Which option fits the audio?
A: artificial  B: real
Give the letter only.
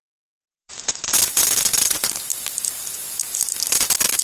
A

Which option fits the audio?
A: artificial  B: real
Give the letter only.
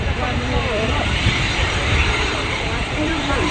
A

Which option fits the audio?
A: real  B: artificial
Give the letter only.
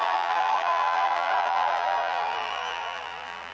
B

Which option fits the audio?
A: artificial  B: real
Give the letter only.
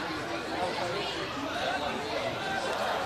B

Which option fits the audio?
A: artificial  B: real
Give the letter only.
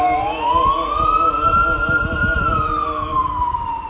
B